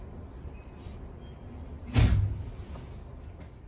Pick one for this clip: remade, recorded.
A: recorded